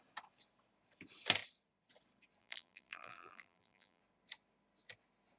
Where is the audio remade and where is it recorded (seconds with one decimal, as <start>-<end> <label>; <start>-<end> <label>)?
0.0-2.4 recorded; 2.4-4.0 remade; 4.0-5.4 recorded